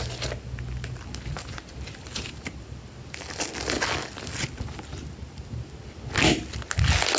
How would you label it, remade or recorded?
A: recorded